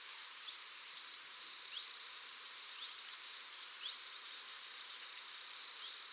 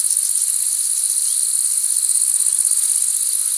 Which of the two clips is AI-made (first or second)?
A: first